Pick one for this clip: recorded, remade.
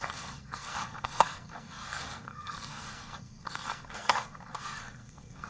remade